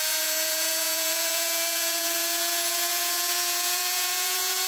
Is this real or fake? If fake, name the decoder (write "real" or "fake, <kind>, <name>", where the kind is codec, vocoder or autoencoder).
fake, vocoder, Vocos